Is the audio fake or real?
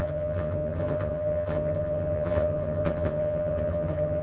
fake